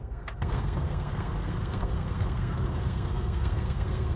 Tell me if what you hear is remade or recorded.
remade